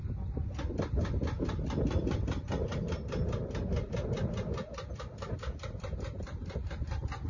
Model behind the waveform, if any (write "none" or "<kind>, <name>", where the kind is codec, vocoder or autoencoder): none